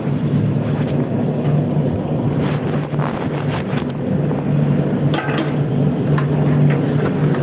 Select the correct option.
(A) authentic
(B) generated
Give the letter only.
A